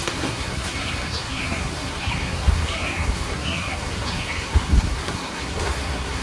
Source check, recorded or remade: remade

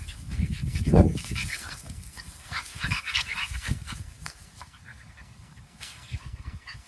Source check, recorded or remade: remade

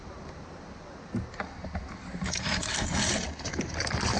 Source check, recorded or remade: recorded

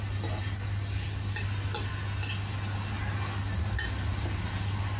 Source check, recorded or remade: recorded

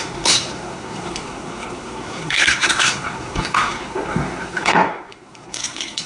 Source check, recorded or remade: remade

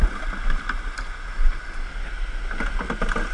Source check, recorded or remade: recorded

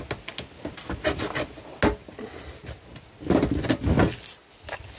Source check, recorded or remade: recorded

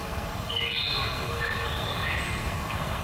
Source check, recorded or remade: remade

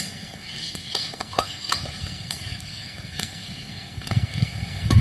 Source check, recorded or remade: remade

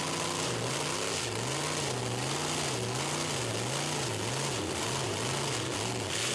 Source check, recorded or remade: recorded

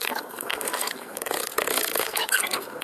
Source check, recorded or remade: remade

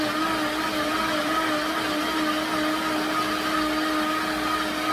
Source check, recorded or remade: recorded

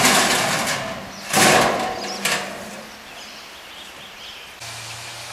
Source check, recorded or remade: recorded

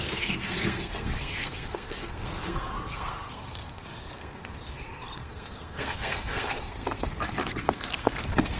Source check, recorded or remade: remade